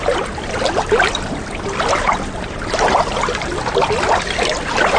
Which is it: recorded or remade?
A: recorded